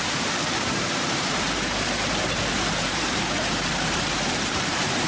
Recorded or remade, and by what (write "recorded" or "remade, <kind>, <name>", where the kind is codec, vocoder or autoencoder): remade, vocoder, BigVGAN v2